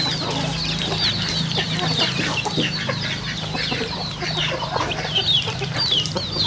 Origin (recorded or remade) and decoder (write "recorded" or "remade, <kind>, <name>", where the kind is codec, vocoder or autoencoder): recorded